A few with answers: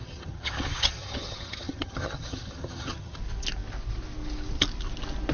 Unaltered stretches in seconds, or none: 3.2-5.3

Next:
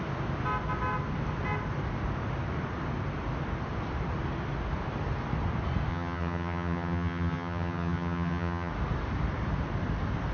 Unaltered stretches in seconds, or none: 0.0-5.9; 8.7-10.3

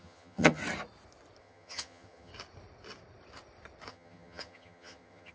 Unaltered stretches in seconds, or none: 0.6-1.4; 2.3-3.9

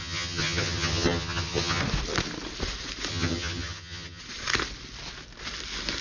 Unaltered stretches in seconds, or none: 1.8-3.1; 4.2-6.0

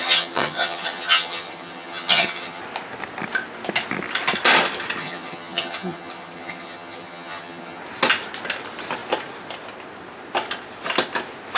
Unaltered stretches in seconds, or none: 2.6-5.0; 7.8-11.6

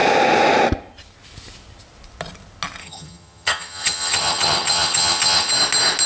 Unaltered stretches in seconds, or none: 0.0-2.8; 5.5-6.1

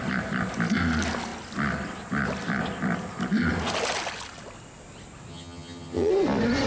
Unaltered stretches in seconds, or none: 0.0-5.3; 6.1-6.7

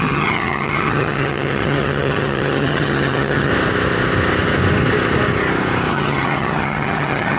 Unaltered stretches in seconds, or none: 3.5-5.9